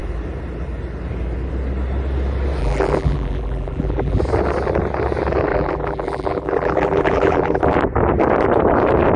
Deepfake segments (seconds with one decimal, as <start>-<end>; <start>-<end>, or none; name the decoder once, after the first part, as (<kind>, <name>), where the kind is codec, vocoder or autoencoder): 2.6-4.2 (vocoder, BigVGAN v2); 5.5-7.8